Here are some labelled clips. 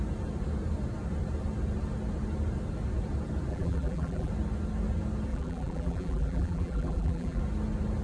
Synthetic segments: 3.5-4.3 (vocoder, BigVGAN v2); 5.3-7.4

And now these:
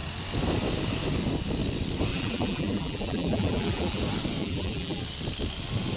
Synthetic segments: 2.1-4.0 (vocoder, BigVGAN v2); 4.4-5.0

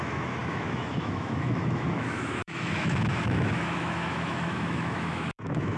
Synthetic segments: 0.0-5.8 (autoencoder, DAC-VAE)

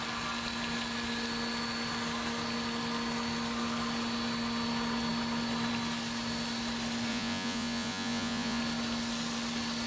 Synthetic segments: 7.1-8.6 (vocoder, Vocos)